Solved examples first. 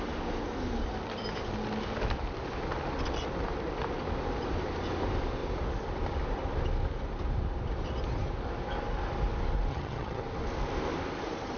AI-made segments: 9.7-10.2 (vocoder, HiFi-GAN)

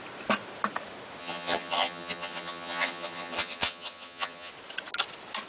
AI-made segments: 1.2-4.5 (vocoder, HiFi-GAN)

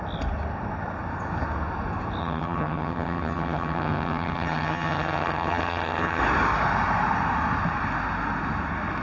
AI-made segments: 2.2-6.2 (vocoder, HiFi-GAN)

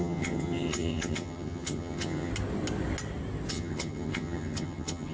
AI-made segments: 0.0-2.3 (vocoder, HiFi-GAN); 3.5-5.1

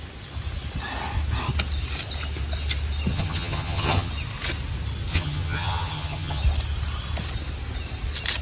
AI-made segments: 3.1-4.1 (vocoder, HiFi-GAN); 5.1-6.4

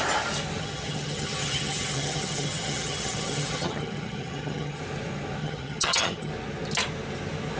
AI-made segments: 0.6-4.8 (vocoder, HiFi-GAN); 5.4-6.3